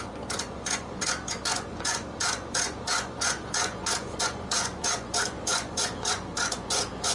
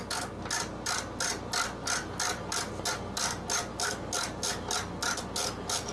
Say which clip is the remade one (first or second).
first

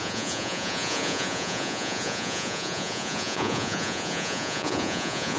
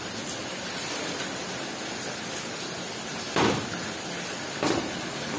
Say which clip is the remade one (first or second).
first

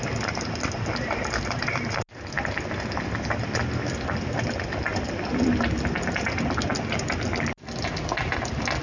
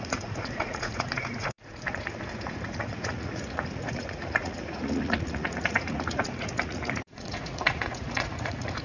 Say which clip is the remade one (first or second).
second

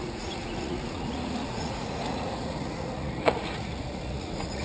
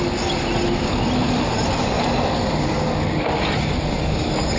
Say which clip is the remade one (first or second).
first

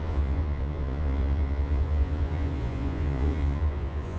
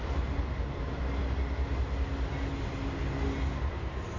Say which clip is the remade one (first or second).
first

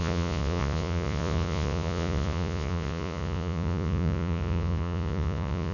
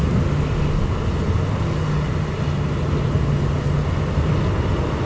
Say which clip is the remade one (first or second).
first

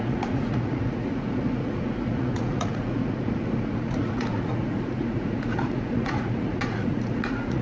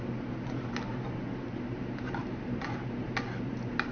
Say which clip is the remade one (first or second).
first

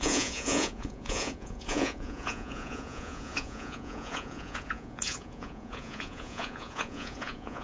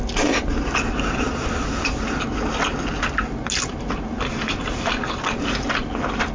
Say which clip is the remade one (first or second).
first